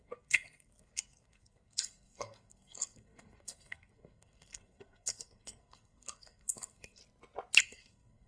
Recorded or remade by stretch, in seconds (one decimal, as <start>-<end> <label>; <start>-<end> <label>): 0.0-7.0 remade; 7.0-7.6 recorded; 7.6-8.3 remade